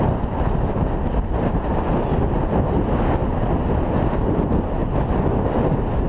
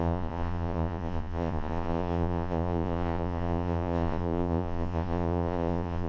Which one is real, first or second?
first